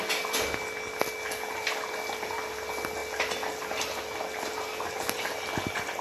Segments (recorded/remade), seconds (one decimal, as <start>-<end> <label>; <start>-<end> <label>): 0.0-6.0 recorded